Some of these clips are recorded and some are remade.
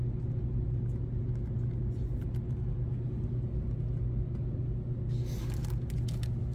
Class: recorded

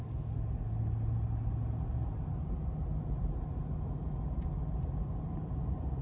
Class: recorded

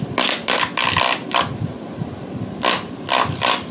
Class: recorded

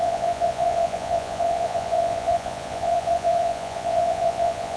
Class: remade